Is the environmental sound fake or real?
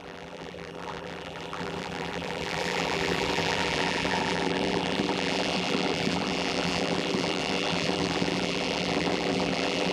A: fake